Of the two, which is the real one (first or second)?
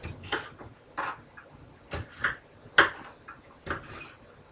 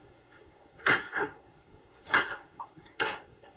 first